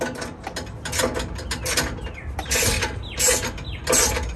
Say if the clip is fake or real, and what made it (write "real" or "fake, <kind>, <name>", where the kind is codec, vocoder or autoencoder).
real